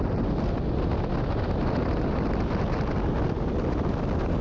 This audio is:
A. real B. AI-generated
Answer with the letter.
A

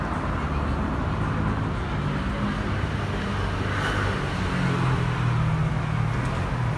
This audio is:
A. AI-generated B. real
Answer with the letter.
B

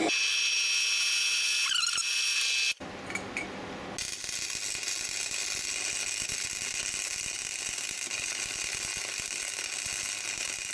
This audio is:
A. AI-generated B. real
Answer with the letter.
B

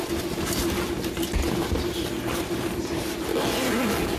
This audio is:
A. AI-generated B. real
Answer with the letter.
B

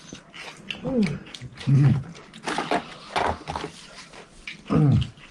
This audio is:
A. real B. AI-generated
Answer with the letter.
A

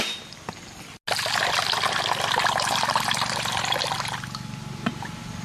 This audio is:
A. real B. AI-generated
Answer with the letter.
A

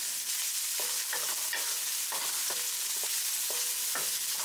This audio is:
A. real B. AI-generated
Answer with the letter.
A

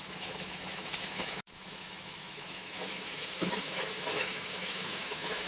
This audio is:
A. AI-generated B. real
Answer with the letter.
A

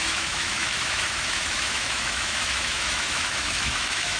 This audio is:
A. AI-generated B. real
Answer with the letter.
A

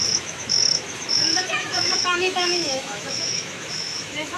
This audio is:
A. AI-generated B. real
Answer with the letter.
A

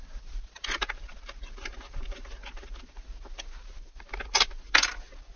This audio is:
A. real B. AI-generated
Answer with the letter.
A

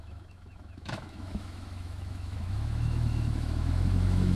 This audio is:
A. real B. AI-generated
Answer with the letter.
B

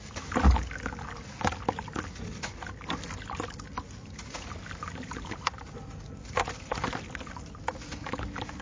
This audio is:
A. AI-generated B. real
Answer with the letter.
B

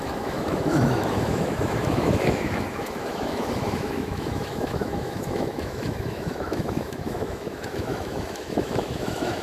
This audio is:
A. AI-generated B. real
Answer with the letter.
A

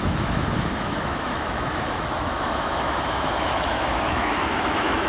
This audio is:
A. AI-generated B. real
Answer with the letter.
A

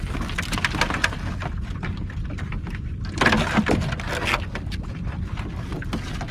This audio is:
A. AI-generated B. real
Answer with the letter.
B